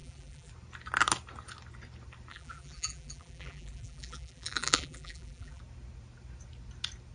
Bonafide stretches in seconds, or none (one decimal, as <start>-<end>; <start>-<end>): 0.5-2.3; 5.6-7.1